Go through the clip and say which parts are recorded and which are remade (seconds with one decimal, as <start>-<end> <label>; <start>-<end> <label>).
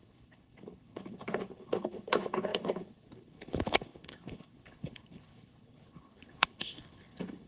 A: 0.0-7.5 remade